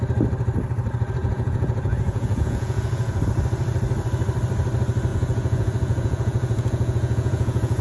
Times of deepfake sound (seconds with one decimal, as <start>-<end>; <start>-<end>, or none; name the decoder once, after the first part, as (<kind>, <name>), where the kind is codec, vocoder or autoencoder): 1.2-3.2 (vocoder, Vocos); 5.1-7.8